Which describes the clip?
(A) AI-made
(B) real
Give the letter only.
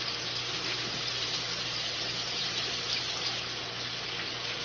B